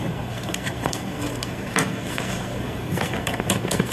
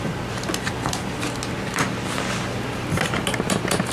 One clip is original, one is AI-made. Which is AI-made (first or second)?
first